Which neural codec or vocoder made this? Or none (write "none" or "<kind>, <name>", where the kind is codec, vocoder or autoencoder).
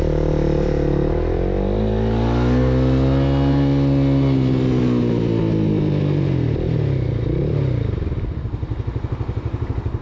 none